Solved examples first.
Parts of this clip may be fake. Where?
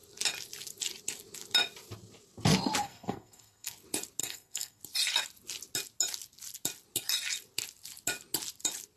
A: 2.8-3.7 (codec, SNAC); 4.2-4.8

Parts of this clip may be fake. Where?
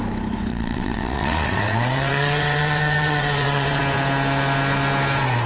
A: 0.5-3.8 (vocoder, WaveNeXt)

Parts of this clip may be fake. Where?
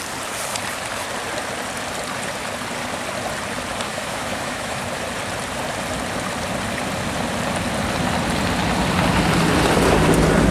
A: 3.9-4.8 (autoencoder, DAC-VAE)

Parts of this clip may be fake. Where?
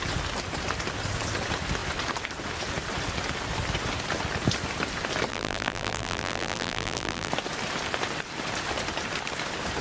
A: 5.3-7.3 (vocoder, BigVGAN v2)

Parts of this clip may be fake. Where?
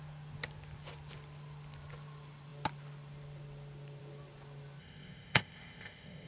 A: 4.8-6.3 (codec, ZipCodec)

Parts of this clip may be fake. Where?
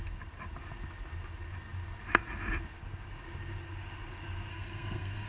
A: 4.5-5.3 (codec, SNAC)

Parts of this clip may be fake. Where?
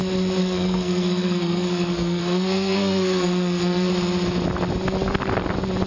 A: 0.4-3.9 (codec, SNAC)